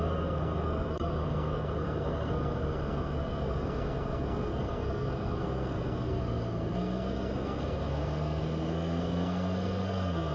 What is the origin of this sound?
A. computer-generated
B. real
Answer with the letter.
A